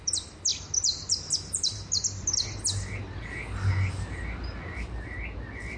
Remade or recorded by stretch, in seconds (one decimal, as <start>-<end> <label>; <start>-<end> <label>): 0.0-5.8 recorded